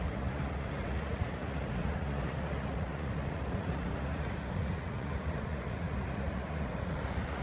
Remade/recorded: remade